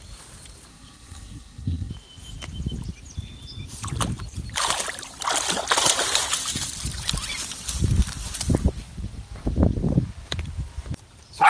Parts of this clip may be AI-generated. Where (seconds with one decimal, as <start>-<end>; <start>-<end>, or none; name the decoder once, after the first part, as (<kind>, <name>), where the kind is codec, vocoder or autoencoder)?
0.7-1.9 (codec, SNAC)